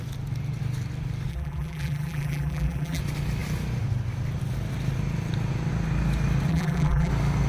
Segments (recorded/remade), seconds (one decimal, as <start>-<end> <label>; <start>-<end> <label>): 0.0-1.3 recorded; 1.3-3.0 remade; 3.0-6.5 recorded; 6.5-7.1 remade; 7.1-7.5 recorded